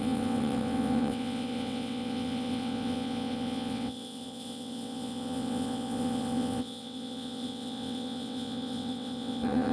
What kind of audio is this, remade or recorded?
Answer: remade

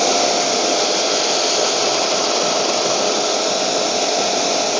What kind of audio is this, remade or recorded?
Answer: recorded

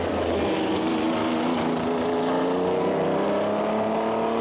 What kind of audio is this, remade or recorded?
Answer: recorded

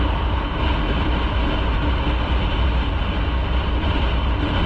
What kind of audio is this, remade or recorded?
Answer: recorded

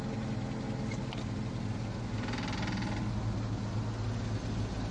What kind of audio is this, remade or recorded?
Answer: recorded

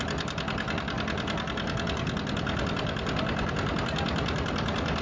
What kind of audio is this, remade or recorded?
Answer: recorded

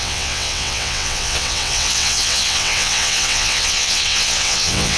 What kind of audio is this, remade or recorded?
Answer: remade